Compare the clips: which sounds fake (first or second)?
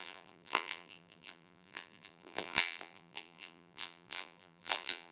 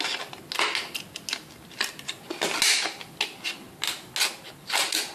first